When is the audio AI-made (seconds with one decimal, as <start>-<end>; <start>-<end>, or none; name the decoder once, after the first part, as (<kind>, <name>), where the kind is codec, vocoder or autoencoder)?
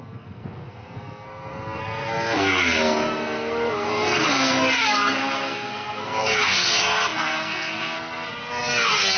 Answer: 0.0-9.2 (codec, SNAC)